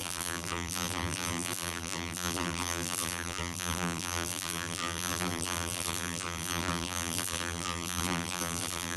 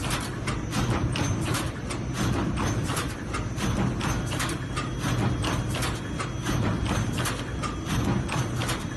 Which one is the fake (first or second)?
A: first